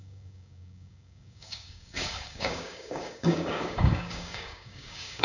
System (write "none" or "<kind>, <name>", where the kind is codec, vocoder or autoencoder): codec, DAC